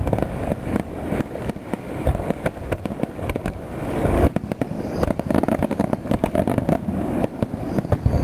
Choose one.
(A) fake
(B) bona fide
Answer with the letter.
A